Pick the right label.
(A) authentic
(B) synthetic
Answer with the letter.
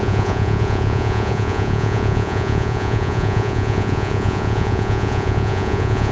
B